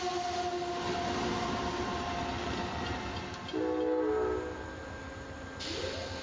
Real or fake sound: real